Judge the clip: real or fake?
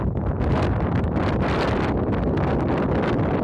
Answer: real